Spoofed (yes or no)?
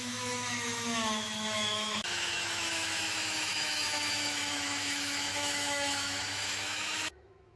yes